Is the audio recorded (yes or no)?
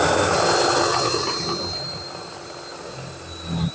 yes